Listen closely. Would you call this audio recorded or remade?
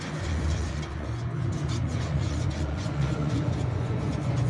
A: remade